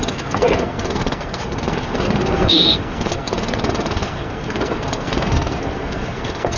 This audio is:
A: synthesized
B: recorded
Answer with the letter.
A